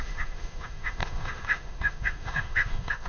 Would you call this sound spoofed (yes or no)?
yes